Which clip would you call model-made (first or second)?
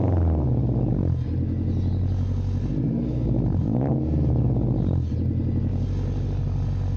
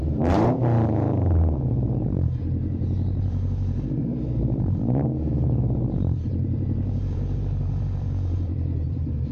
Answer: second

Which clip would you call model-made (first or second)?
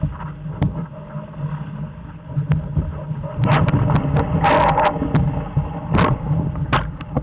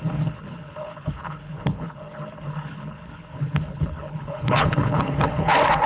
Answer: second